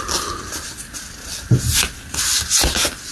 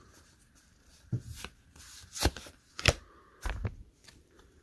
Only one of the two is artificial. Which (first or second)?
second